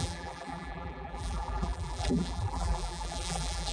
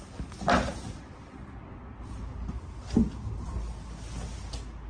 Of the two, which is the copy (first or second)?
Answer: first